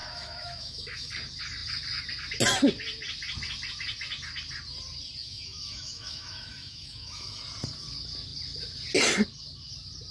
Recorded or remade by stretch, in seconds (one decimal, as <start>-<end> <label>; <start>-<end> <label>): 0.0-1.1 remade; 1.1-5.2 recorded; 5.2-7.4 remade; 7.4-10.1 recorded